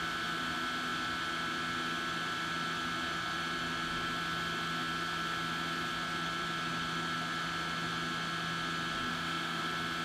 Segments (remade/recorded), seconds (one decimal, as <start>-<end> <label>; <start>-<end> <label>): 0.0-9.1 recorded; 9.1-9.6 remade; 9.6-10.0 recorded